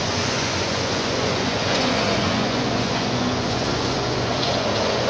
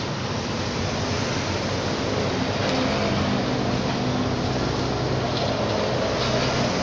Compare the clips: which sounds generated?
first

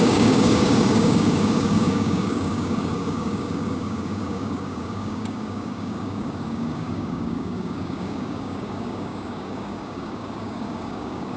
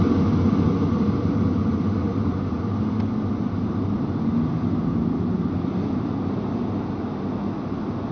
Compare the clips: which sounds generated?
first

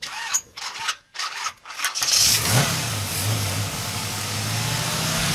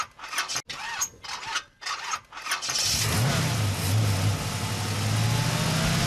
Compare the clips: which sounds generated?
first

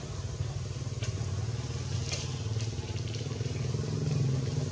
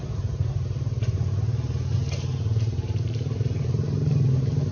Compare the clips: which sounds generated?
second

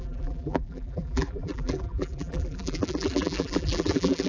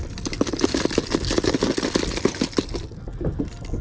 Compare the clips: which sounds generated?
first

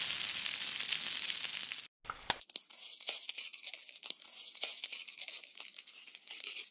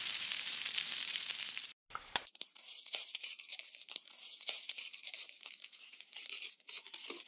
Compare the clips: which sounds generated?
second